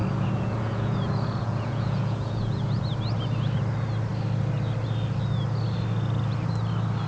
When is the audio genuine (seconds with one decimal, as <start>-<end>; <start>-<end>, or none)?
2.8-7.1

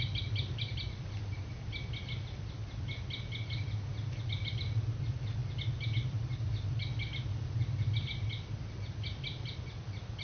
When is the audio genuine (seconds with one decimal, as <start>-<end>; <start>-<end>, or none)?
0.0-10.2

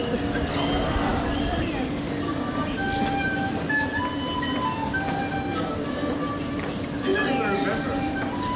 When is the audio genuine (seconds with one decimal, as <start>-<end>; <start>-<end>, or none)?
0.0-8.6

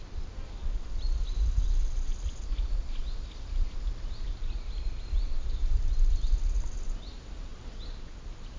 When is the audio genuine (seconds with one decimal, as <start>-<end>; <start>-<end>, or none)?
0.0-8.6

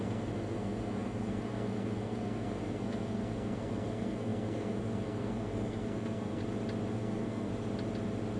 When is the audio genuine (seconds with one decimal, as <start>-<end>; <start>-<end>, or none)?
6.4-6.9; 7.5-8.4